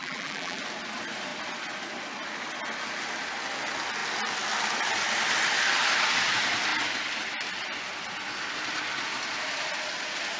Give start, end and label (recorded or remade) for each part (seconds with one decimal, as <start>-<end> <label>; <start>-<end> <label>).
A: 0.0-0.6 remade; 0.6-10.4 recorded